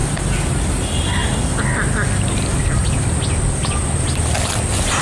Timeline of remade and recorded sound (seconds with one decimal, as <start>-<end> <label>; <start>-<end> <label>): 0.0-5.0 recorded